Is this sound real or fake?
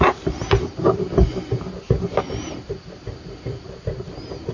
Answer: real